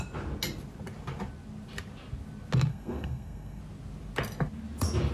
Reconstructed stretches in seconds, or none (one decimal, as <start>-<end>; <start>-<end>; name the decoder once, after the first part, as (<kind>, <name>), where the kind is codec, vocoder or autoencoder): 2.7-3.6 (codec, SNAC)